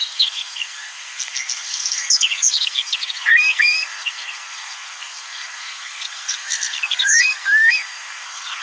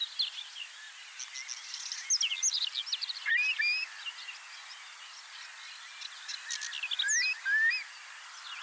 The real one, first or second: second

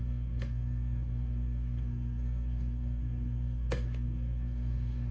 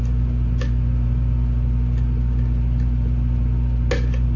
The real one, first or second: second